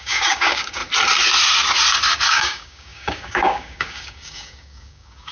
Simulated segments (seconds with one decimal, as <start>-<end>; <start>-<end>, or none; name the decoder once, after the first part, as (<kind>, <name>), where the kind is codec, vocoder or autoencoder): 0.0-0.8 (codec, DAC); 2.3-5.3

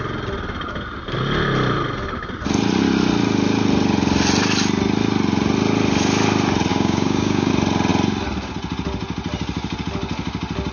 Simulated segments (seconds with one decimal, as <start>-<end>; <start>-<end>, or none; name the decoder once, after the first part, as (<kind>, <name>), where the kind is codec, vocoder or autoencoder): 6.7-7.5 (codec, DAC)

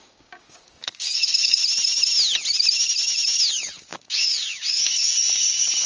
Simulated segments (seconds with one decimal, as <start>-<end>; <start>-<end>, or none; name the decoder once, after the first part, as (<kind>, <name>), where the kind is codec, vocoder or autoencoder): 0.0-1.6 (codec, DAC); 3.5-5.9

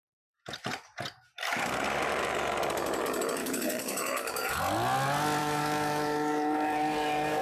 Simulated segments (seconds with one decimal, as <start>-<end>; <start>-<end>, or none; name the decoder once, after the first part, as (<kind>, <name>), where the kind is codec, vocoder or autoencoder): 3.4-4.6 (codec, DAC); 5.4-7.4